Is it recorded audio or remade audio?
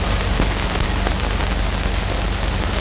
recorded